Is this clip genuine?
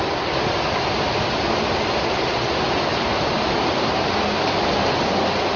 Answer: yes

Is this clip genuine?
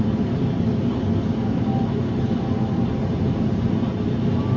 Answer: yes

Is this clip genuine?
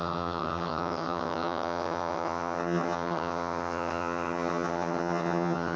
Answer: no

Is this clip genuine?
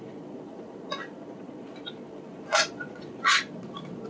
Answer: no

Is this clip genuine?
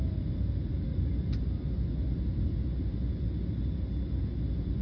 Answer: yes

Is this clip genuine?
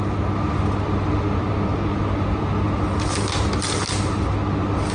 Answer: yes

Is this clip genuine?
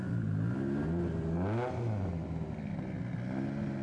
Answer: yes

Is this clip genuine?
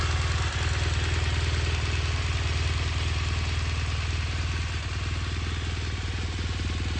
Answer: yes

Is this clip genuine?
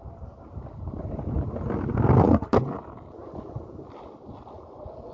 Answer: yes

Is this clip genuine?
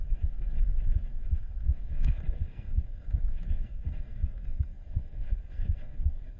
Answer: no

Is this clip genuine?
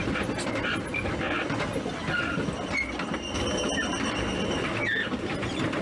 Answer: yes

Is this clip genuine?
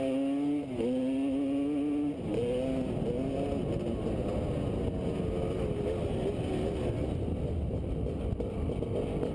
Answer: yes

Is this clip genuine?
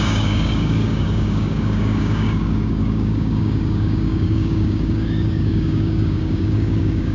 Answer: no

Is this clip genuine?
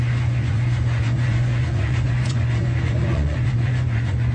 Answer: no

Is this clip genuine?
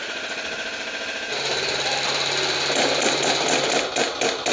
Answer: yes